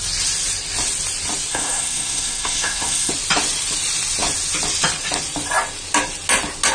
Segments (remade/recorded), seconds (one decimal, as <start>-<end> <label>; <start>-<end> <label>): 0.0-1.5 recorded; 1.5-3.1 remade; 3.1-6.7 recorded